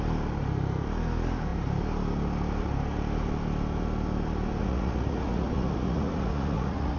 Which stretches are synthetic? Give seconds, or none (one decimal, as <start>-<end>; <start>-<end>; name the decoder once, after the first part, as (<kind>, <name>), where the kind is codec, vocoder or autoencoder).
4.6-7.0 (vocoder, Vocos)